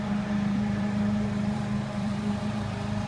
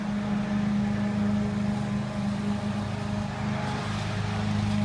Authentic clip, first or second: second